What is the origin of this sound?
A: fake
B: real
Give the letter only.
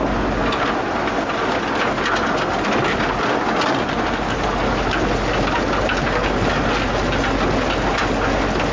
B